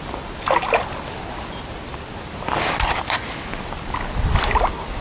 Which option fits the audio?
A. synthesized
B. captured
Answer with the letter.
B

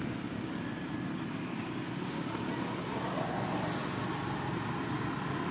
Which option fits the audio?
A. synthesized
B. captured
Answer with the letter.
B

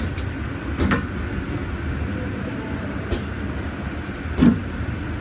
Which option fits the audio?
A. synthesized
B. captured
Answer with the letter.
B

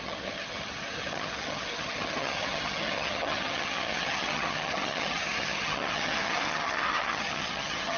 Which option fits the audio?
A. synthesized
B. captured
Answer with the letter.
A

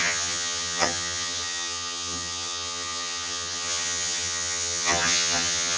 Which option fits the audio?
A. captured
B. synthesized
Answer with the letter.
B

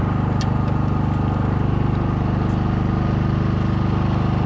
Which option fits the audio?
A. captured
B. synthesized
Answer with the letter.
A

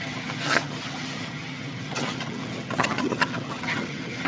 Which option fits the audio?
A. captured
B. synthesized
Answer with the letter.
B